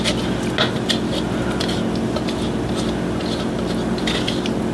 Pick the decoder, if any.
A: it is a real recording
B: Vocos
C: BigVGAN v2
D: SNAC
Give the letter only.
A